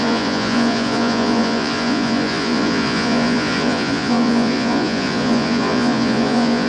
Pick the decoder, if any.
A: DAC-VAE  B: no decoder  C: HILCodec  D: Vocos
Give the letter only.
D